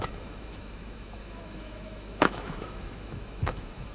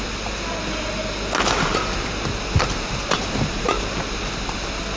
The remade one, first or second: first